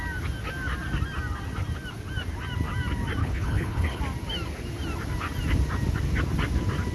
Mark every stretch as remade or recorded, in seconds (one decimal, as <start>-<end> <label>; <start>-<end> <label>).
0.0-3.2 recorded; 3.2-4.0 remade; 4.0-6.9 recorded